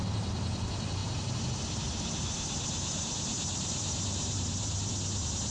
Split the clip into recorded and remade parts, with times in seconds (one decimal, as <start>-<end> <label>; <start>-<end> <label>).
0.0-3.5 recorded; 3.5-4.9 remade; 4.9-5.5 recorded